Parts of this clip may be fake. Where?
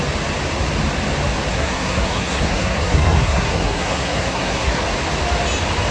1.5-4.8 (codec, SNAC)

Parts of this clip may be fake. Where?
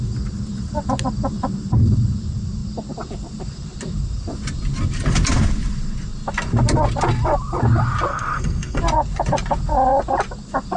8.1-8.8 (codec, SNAC)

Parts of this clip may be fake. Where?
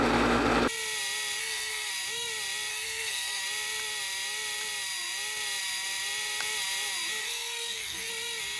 1.4-1.9 (codec, SNAC); 2.7-3.4; 7.2-8.1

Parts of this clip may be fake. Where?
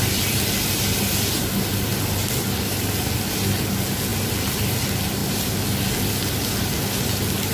none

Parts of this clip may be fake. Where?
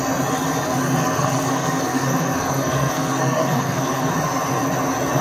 1.0-4.1 (codec, SNAC)